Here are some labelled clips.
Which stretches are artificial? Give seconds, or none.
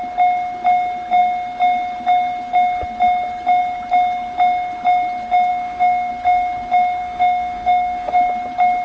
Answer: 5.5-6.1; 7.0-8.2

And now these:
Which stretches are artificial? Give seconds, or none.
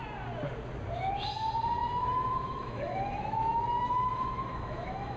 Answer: 1.8-5.2